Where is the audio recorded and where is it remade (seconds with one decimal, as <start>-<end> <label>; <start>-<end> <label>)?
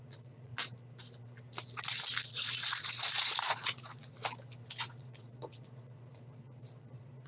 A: 0.0-0.5 remade; 0.5-2.3 recorded; 2.3-4.2 remade; 4.2-4.9 recorded; 4.9-7.3 remade